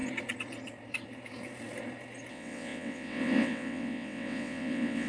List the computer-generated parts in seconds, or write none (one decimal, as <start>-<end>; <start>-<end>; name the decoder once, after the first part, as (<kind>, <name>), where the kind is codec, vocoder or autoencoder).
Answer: 2.3-5.1 (vocoder, WaveNeXt)